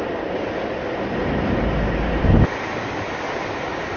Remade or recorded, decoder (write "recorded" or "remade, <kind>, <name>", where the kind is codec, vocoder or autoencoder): recorded